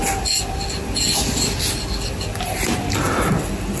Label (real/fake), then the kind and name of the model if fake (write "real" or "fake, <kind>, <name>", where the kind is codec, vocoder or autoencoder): real